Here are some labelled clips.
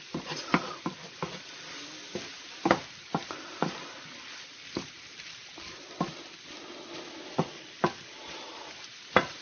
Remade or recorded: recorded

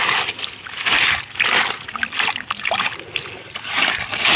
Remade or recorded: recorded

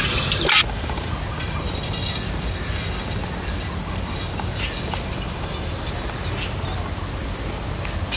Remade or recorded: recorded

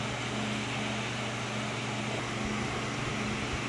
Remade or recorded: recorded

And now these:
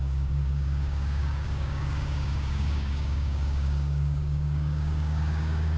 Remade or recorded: remade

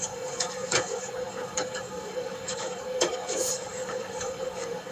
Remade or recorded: remade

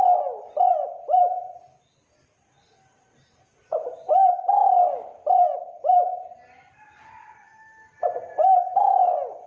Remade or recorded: recorded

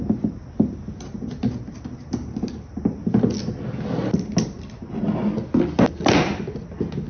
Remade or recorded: recorded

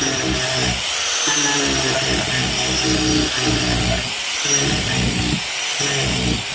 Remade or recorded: recorded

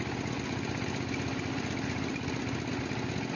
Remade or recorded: recorded